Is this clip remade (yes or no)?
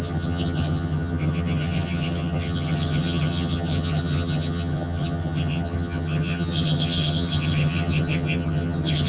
yes